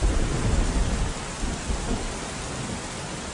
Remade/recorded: recorded